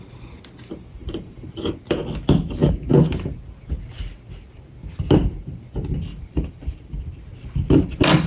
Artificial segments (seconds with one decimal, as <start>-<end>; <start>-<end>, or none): 1.0-1.7; 6.1-7.0